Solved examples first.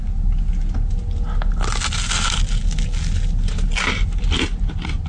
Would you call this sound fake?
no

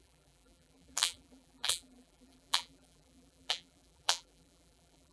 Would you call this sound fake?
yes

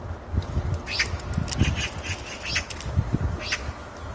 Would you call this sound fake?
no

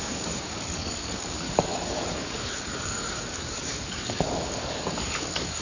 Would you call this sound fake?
yes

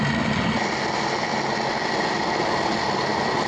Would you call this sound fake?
no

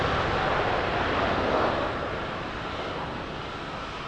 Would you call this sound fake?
no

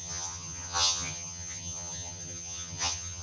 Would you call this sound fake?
yes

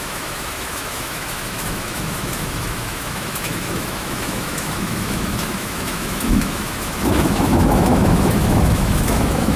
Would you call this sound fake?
yes